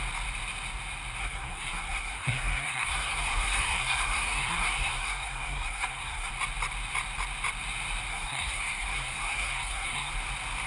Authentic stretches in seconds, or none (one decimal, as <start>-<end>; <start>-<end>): 0.0-1.2; 6.3-8.1; 10.1-10.7

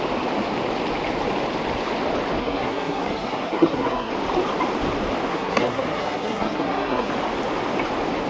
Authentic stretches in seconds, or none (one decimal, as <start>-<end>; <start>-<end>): 0.0-2.4; 4.1-5.3; 7.1-8.3